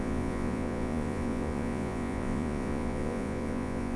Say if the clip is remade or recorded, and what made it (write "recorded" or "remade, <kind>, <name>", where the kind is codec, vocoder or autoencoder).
remade, vocoder, Vocos